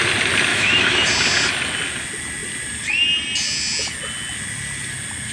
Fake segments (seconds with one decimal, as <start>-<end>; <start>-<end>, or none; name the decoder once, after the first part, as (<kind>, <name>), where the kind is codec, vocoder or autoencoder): 0.5-1.1 (autoencoder, DAC-VAE)